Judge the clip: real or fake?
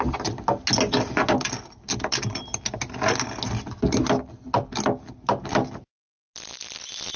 real